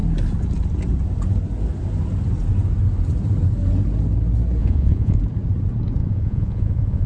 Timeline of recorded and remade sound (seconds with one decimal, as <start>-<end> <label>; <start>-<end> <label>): 0.0-4.6 recorded; 4.6-5.2 remade; 5.2-6.0 recorded; 6.0-7.1 remade